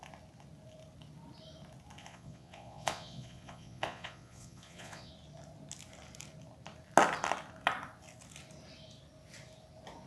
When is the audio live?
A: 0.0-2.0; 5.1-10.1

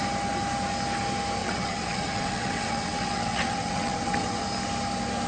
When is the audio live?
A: 0.0-1.4; 4.4-5.3

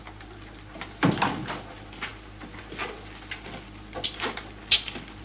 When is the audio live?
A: 0.0-5.2